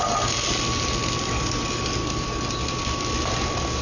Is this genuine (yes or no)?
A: yes